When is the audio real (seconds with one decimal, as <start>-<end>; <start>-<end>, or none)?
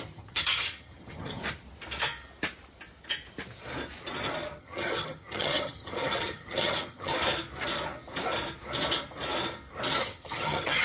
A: 1.4-4.6; 7.1-10.0